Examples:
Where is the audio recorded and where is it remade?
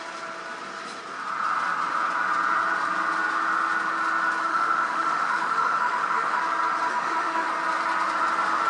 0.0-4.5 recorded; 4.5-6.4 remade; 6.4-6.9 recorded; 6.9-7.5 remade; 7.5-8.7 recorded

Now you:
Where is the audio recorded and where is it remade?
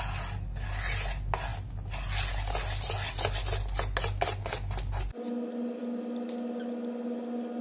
0.0-7.6 recorded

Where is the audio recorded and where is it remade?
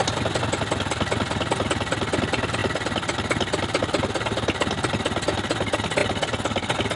0.0-7.0 recorded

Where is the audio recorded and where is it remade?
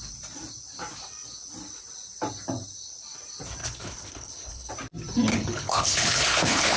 0.0-3.6 recorded; 3.6-4.7 remade; 4.7-5.3 recorded; 5.3-6.8 remade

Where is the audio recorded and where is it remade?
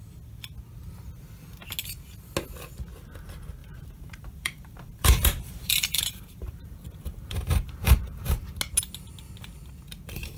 0.0-3.6 recorded; 3.6-8.5 remade; 8.5-10.4 recorded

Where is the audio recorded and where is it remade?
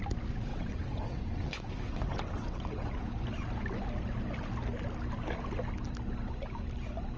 0.0-0.5 recorded; 0.5-3.0 remade; 3.0-7.2 recorded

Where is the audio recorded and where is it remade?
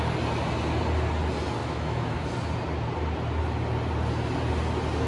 0.0-1.6 recorded; 1.6-2.3 remade; 2.3-5.1 recorded